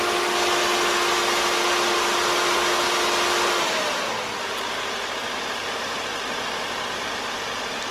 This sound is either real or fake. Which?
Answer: real